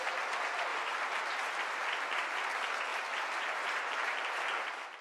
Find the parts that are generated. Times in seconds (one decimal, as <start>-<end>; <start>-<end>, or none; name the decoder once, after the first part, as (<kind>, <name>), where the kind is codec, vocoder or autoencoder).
0.7-1.2 (vocoder, BigVGAN v2); 2.9-4.3